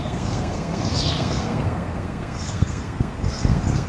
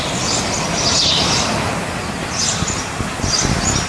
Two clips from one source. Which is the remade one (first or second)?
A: first